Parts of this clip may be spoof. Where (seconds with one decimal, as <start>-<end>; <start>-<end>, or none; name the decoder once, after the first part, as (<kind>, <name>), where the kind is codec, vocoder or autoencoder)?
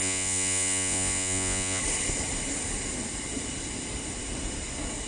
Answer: 0.0-1.8 (vocoder, Vocos)